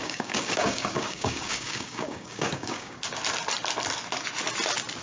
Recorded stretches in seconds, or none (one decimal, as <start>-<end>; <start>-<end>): 3.0-5.0